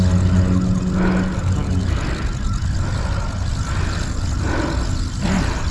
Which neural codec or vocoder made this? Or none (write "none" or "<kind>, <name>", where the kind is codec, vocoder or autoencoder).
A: none